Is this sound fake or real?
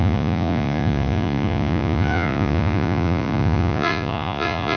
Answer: fake